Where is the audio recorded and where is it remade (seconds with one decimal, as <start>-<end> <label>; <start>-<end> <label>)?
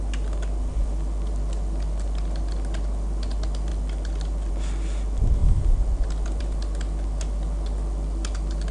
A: 0.0-8.7 recorded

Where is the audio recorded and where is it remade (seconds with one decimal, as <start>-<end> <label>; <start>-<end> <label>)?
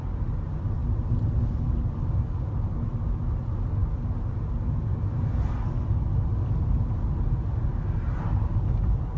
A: 0.0-9.2 recorded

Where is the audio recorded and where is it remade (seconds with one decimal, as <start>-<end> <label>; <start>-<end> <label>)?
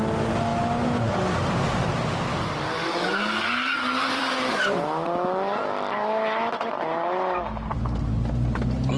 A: 0.0-2.3 recorded; 2.3-4.5 remade; 4.5-9.0 recorded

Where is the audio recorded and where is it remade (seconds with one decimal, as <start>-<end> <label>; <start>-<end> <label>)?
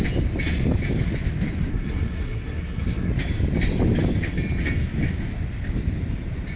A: 0.0-1.7 recorded; 1.7-3.1 remade; 3.1-6.6 recorded